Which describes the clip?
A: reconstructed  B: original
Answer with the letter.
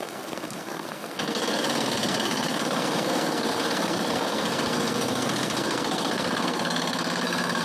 A